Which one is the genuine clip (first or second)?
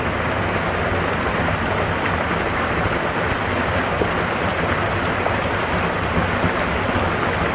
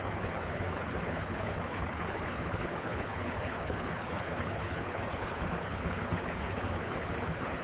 first